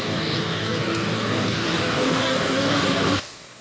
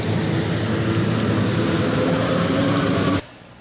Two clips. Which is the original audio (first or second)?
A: second